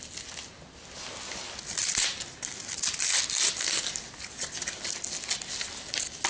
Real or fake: real